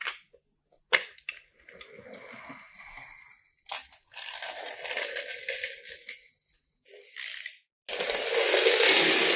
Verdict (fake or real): real